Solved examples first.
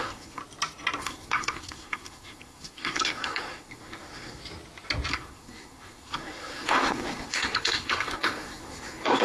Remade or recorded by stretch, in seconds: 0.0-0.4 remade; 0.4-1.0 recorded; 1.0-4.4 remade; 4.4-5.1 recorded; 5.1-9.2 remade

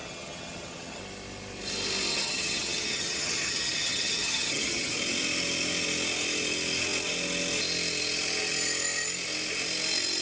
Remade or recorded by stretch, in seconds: 0.0-1.0 remade; 1.0-2.1 recorded; 2.1-5.0 remade; 5.0-10.2 recorded

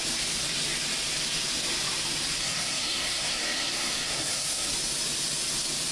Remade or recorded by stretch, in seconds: 0.0-2.4 recorded; 2.4-4.7 remade; 4.7-5.9 recorded